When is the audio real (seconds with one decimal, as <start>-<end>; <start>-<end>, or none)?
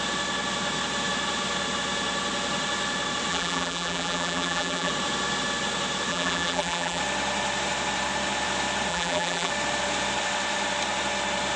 0.0-3.3; 4.9-6.1; 7.0-8.9; 9.5-11.6